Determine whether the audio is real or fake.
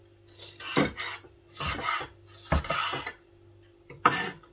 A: real